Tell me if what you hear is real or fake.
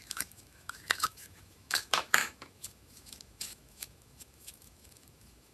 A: fake